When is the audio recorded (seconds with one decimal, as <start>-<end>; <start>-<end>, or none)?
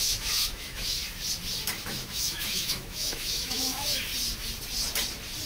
1.0-1.8; 4.1-5.5